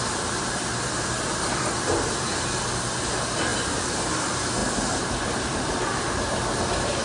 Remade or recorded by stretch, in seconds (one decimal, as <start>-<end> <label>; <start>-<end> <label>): 0.0-4.6 recorded; 4.6-6.1 remade; 6.1-7.0 recorded